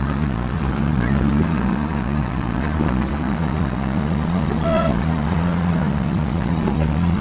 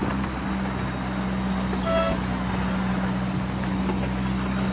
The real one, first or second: second